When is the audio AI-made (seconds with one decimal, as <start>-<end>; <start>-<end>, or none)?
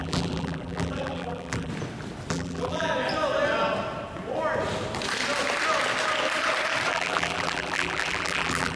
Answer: 0.0-1.7; 2.3-2.9; 6.9-8.8